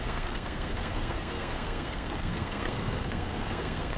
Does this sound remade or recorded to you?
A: remade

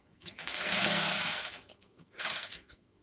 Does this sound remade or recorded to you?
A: remade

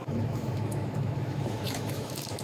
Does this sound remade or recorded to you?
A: remade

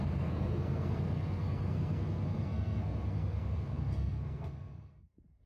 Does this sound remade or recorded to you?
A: remade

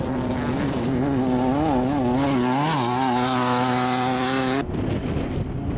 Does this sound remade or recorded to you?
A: recorded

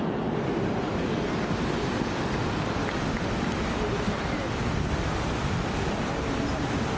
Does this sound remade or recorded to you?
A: recorded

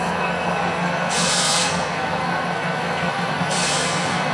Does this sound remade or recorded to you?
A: remade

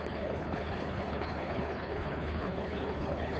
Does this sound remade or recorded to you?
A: remade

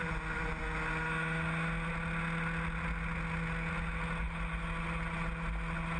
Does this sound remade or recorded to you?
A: recorded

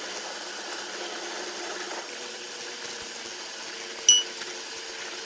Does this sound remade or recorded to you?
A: recorded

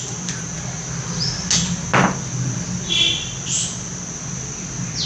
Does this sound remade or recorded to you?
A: recorded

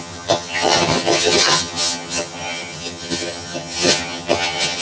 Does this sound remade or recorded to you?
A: remade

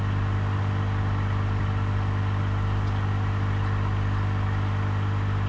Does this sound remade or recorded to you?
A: recorded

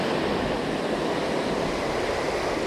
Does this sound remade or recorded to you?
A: recorded